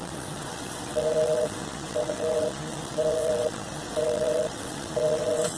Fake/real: fake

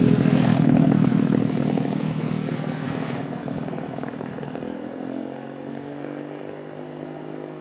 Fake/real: fake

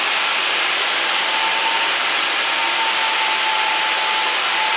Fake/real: real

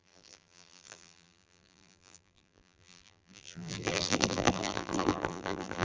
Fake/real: fake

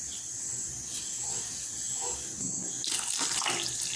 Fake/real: real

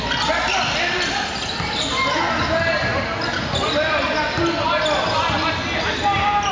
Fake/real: real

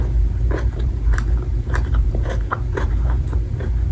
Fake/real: fake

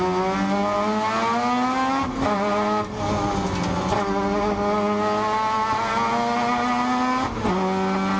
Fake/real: real